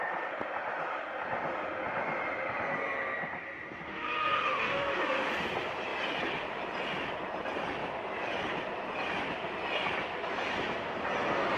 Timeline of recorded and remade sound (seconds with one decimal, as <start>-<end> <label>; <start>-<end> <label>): 0.0-3.9 recorded; 3.9-5.3 remade; 5.3-11.6 recorded